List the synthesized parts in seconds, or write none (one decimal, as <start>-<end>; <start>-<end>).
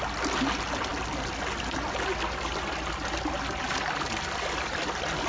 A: none